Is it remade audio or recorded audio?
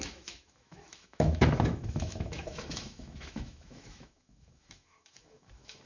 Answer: remade